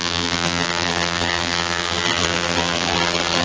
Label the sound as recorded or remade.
remade